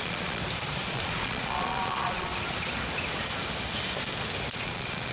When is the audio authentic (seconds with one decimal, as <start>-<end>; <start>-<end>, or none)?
0.4-0.9; 2.3-4.5